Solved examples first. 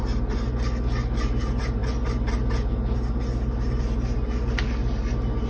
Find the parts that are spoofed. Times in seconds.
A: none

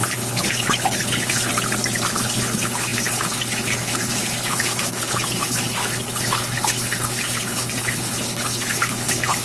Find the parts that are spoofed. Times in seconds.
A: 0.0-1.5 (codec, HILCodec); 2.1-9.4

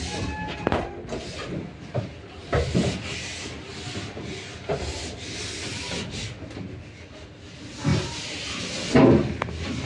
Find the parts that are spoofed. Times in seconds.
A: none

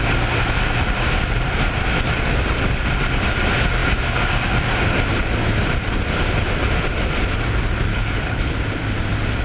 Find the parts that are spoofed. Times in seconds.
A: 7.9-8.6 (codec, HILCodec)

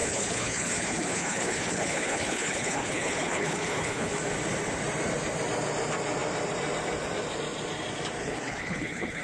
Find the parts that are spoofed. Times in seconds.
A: 0.0-4.1 (codec, HILCodec); 8.2-9.2